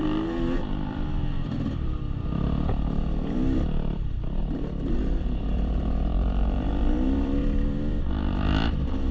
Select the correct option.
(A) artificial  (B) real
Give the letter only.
A